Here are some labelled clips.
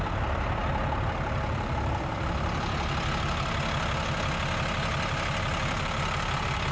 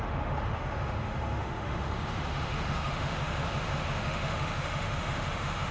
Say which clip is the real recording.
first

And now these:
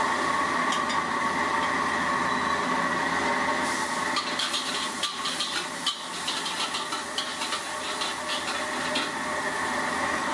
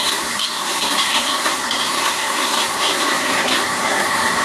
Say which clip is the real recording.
first